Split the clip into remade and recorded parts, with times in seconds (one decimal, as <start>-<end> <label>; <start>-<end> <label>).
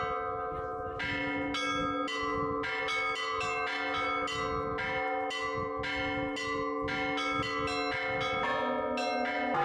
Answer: 0.0-9.6 recorded